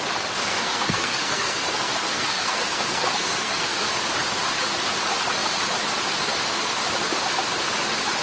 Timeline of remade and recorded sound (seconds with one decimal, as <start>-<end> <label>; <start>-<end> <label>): 0.0-0.4 recorded; 0.4-3.8 remade; 3.8-8.2 recorded